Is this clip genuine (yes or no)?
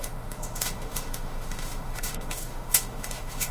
no